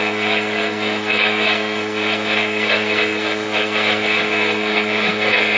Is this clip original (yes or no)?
no